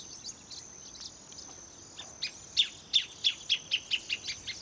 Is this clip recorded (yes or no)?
yes